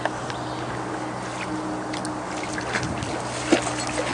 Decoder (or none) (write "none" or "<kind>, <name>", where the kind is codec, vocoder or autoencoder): none